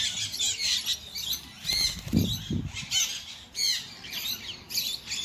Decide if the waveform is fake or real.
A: real